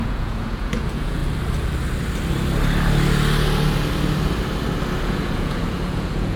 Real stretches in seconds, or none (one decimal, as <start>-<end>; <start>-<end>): 1.2-5.0